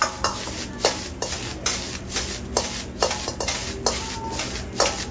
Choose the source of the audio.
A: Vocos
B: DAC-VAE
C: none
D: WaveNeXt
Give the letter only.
C